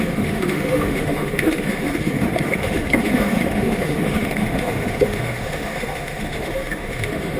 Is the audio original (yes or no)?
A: no